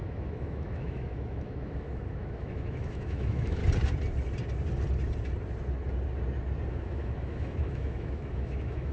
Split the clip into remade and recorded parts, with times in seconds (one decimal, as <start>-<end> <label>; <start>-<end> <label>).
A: 0.0-3.6 remade; 3.6-6.7 recorded; 6.7-8.9 remade